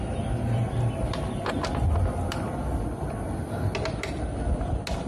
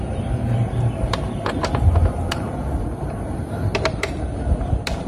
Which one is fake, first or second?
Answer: second